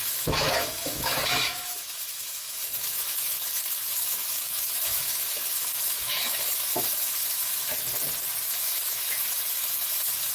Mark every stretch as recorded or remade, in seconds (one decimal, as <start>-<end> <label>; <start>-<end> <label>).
0.0-7.7 remade; 7.7-8.5 recorded; 8.5-10.3 remade